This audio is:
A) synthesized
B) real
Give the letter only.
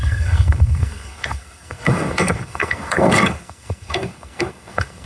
A